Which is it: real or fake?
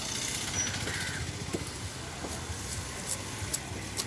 real